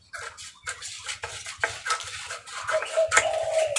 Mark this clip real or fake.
real